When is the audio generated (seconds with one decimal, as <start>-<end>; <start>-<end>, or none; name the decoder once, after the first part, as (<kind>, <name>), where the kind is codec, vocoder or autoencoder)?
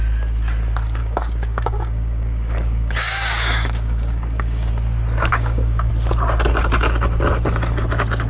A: 1.0-4.7 (codec, DAC); 5.3-5.9